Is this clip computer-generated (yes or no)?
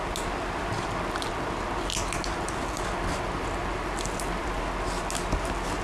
no